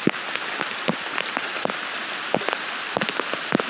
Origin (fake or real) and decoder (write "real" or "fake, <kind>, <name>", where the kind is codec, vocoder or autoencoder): real